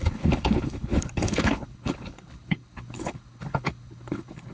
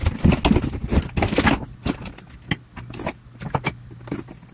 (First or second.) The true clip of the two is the second